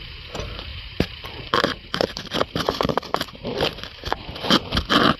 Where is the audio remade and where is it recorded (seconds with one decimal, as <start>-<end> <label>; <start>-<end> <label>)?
0.0-0.7 recorded; 0.7-3.3 remade; 3.3-5.2 recorded